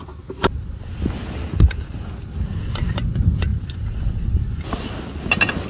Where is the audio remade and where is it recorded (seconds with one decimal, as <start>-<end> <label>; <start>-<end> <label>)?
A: 0.0-5.7 recorded